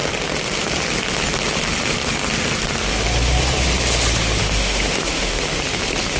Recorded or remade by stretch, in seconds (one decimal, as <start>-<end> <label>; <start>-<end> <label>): 0.0-4.4 recorded; 4.4-5.4 remade; 5.4-6.2 recorded